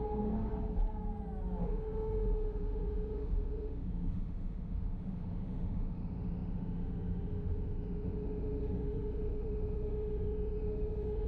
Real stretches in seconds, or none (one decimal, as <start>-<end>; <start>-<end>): 0.5-1.6

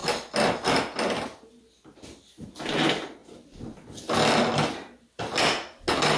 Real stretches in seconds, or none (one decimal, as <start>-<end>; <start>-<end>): 0.0-6.2

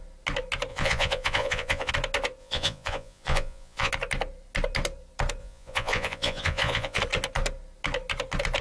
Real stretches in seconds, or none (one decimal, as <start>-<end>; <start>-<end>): 0.0-0.7; 1.9-2.4; 3.9-5.4; 7.0-8.6

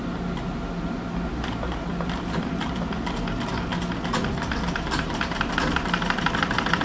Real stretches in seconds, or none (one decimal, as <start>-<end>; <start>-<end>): 0.0-6.8

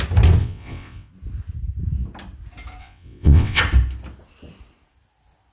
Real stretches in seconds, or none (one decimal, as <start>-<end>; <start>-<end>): 0.0-0.4; 1.1-2.8; 3.6-5.5

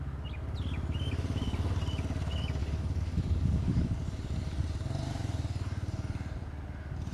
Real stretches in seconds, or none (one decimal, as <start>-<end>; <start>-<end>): 0.0-2.6; 3.9-7.1

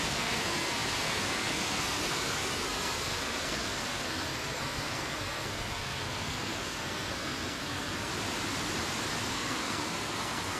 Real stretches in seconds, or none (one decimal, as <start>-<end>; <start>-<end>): 8.1-9.3